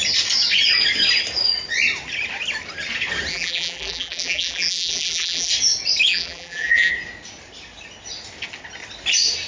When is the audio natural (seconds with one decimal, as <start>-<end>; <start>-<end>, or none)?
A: 0.0-3.3; 5.5-6.1; 6.9-9.5